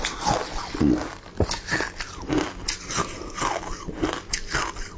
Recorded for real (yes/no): yes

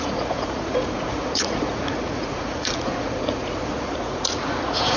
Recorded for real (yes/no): no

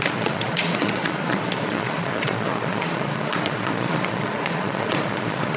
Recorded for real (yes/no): no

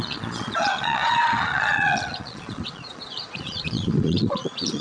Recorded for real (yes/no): no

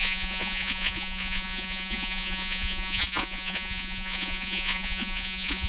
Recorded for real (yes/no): no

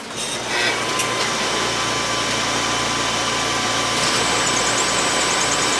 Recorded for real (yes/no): yes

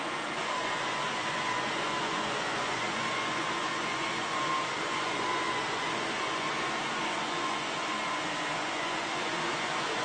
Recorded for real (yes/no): no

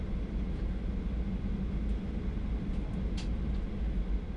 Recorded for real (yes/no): yes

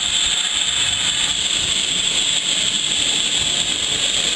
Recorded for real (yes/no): yes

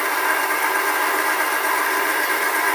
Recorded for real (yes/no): yes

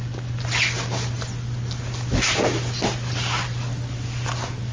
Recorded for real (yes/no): yes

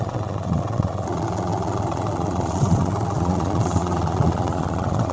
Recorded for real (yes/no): no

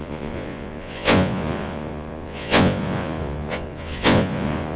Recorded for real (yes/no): no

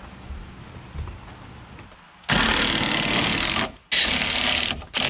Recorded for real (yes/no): yes